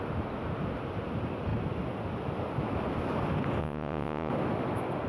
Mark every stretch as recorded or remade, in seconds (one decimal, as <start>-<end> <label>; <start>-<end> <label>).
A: 0.0-3.6 recorded; 3.6-4.3 remade; 4.3-5.1 recorded